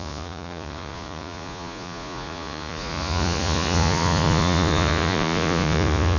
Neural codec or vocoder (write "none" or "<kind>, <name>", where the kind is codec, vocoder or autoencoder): vocoder, Vocos